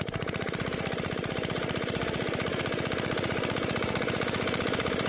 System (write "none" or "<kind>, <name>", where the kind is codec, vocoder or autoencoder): vocoder, BigVGAN v2